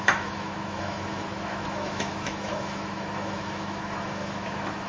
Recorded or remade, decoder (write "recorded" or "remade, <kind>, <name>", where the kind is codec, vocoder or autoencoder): remade, autoencoder, DAC-VAE